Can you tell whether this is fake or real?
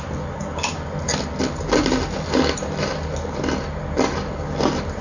real